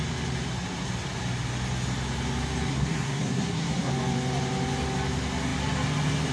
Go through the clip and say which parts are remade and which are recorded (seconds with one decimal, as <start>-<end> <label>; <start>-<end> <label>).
0.0-2.7 recorded; 2.7-3.9 remade; 3.9-6.3 recorded